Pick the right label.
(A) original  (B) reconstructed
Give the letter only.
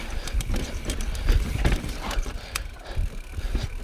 B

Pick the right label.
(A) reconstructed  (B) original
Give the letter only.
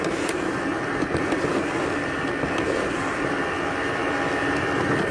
B